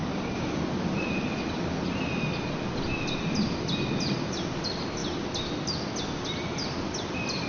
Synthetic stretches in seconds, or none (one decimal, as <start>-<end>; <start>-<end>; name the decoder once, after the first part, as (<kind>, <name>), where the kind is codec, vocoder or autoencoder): 0.0-0.6 (codec, DAC)